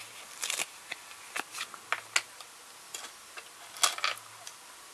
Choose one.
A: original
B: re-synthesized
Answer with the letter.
A